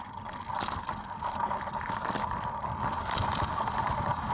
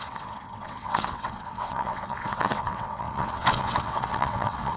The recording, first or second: first